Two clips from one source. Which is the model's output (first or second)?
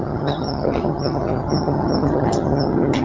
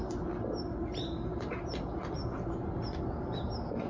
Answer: first